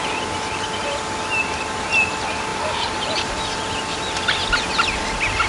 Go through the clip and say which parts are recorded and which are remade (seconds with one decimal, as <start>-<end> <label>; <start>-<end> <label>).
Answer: 0.0-2.5 recorded; 2.5-3.3 remade; 3.3-5.5 recorded